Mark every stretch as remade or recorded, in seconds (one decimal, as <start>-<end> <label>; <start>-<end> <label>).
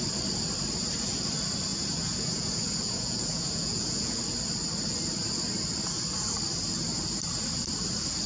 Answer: 0.0-1.7 recorded; 1.7-4.2 remade; 4.2-8.3 recorded